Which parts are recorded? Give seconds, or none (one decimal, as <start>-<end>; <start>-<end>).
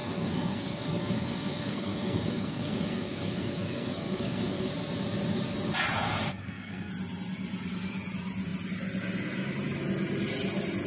4.7-6.3; 6.9-10.9